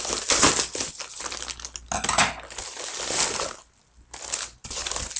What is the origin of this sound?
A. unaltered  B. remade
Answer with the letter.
A